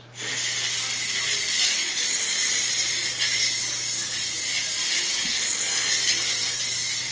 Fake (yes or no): no